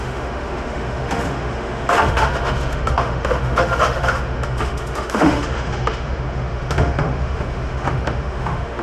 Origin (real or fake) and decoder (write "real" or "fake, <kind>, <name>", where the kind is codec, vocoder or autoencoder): fake, autoencoder, DAC-VAE